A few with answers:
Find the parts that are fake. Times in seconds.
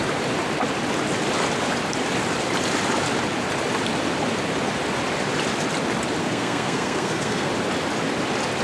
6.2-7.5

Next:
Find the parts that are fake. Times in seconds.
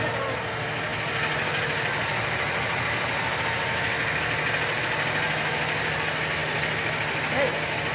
none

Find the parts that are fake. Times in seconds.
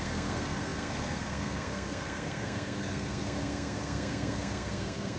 0.0-5.2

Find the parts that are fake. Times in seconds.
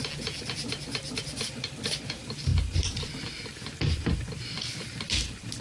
2.5-3.3